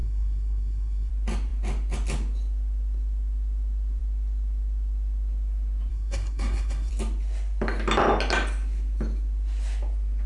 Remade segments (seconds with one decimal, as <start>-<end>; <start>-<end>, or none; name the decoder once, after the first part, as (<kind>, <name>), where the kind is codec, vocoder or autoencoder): 0.0-1.1 (codec, SNAC); 5.9-6.9